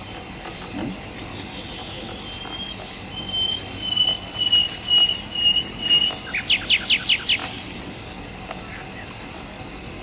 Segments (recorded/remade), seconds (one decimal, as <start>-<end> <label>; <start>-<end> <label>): 0.0-10.0 recorded